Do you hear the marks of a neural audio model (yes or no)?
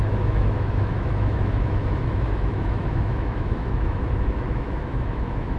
yes